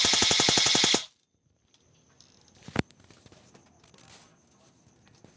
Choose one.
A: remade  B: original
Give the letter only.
B